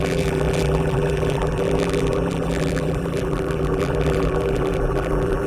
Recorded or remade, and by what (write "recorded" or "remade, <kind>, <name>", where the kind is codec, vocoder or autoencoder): remade, vocoder, BigVGAN v2